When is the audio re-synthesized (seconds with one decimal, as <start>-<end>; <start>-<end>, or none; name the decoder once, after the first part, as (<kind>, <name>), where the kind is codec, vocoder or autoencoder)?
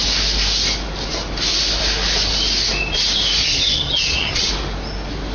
3.4-4.5 (vocoder, HiFi-GAN)